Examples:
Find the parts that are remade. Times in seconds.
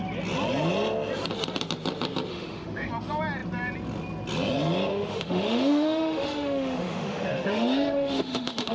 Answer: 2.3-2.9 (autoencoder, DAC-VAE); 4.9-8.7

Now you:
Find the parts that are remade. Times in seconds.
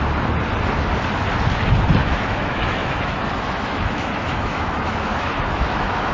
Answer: 2.0-6.1 (autoencoder, DAC-VAE)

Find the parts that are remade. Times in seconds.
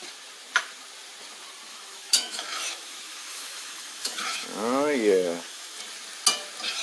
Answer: 1.7-5.8 (autoencoder, DAC-VAE)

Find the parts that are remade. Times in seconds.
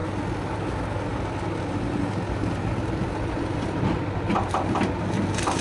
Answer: none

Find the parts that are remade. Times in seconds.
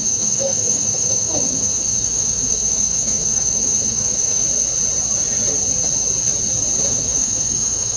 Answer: 0.0-4.4 (autoencoder, DAC-VAE); 6.9-8.0